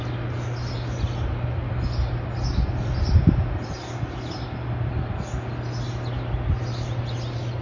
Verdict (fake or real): real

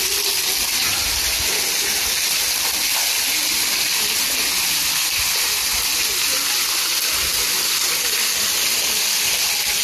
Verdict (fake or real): real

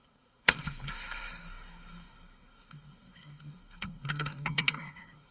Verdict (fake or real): fake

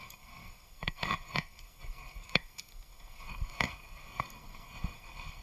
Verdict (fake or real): fake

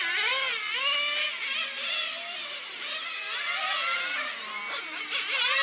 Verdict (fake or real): real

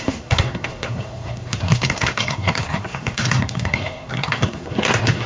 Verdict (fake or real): fake